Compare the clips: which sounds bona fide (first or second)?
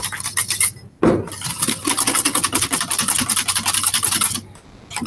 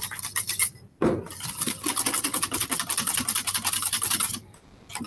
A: first